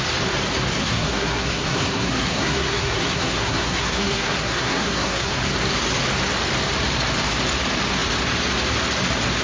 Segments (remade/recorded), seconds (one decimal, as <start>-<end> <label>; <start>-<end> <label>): 0.0-0.8 recorded; 0.8-5.3 remade; 5.3-9.4 recorded